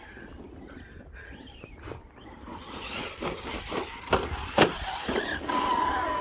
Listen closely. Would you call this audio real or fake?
real